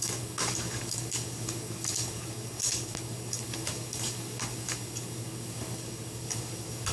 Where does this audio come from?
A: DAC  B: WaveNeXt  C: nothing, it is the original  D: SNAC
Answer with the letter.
A